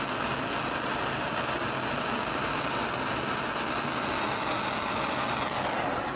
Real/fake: real